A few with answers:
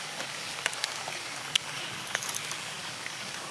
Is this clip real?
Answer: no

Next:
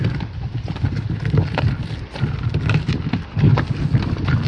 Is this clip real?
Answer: yes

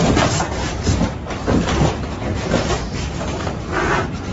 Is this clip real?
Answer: yes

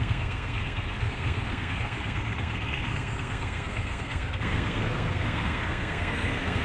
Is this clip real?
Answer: no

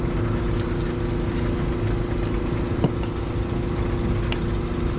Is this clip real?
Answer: yes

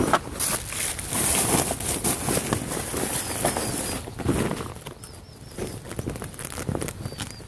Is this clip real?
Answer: yes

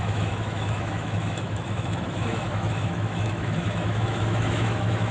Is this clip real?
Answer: no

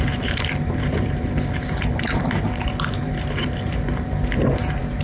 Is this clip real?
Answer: no